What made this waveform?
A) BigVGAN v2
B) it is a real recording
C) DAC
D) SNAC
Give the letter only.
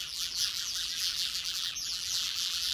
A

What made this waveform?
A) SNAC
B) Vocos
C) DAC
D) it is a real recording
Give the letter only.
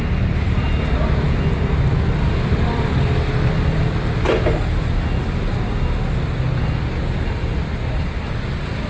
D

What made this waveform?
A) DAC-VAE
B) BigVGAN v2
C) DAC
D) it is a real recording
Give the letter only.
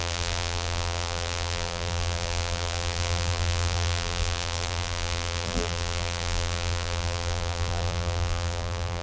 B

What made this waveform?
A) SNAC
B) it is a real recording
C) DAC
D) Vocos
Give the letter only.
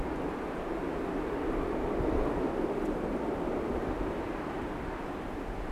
B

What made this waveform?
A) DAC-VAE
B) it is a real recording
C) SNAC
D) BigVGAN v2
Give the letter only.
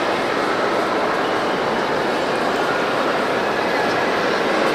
B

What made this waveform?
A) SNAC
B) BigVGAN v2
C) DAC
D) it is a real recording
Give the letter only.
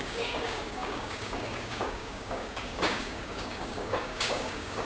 C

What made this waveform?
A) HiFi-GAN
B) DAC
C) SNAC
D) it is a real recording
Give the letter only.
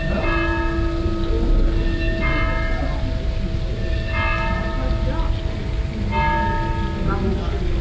D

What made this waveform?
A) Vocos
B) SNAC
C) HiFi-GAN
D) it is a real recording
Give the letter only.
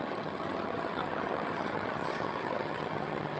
C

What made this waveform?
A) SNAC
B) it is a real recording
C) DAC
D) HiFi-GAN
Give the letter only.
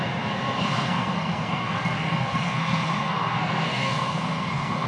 A